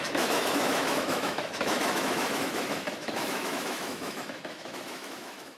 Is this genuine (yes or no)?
no